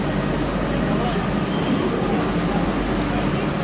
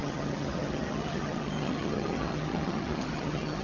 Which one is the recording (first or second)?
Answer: first